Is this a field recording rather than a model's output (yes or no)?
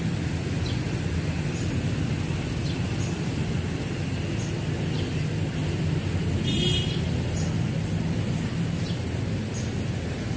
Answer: yes